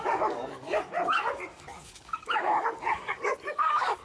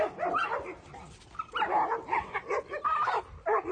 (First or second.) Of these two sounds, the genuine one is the second